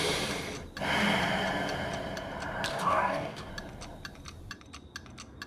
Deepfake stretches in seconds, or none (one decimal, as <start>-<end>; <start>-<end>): 2.7-3.5